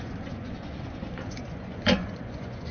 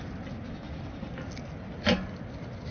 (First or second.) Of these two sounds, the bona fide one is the second